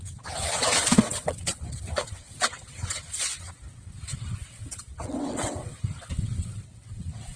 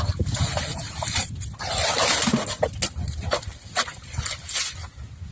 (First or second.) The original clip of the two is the second